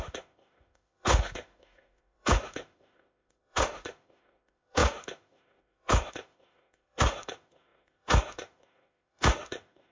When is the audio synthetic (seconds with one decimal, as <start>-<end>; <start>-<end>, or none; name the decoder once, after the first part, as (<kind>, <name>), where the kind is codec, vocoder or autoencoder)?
0.0-9.9 (autoencoder, DAC-VAE)